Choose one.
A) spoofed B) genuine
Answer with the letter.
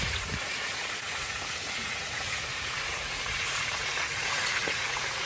A